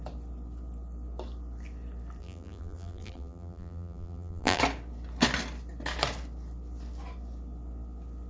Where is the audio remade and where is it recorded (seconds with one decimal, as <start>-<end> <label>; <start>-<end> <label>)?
0.0-2.2 recorded; 2.2-4.6 remade; 4.6-8.3 recorded